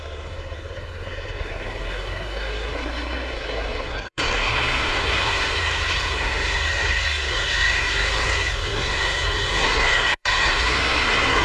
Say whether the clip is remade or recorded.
remade